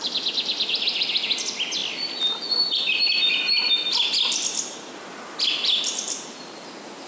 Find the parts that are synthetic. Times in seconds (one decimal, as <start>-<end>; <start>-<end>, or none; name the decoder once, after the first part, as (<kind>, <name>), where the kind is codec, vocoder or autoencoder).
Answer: none